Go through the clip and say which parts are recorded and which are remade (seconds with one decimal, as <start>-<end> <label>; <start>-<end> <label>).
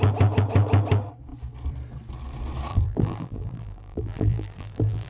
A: 0.0-2.7 recorded; 2.7-5.1 remade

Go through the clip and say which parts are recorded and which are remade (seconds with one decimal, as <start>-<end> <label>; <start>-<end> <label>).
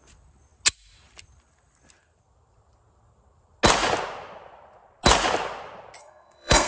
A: 0.0-6.0 recorded; 6.0-6.7 remade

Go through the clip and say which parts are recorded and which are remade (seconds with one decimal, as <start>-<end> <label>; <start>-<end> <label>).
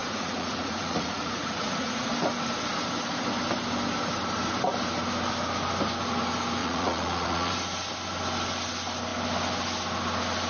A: 0.0-2.1 remade; 2.1-6.6 recorded; 6.6-7.5 remade; 7.5-10.5 recorded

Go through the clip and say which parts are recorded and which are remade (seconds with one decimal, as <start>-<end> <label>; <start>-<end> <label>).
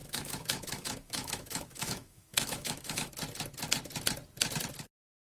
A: 0.0-3.1 remade; 3.1-5.2 recorded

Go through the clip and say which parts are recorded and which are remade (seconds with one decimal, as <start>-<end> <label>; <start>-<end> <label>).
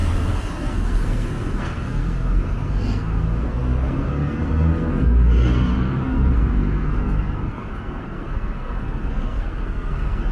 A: 0.0-10.3 remade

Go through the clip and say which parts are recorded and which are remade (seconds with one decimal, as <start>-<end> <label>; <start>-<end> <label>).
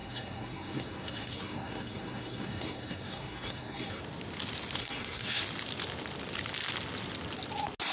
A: 0.0-4.0 remade; 4.0-4.8 recorded; 4.8-5.4 remade; 5.4-7.9 recorded